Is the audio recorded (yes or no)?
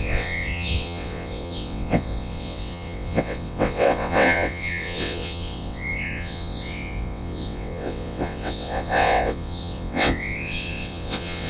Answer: no